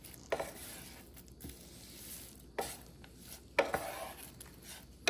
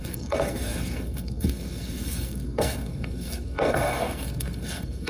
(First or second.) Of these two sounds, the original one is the first